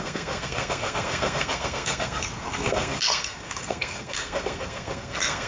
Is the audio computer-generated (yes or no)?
yes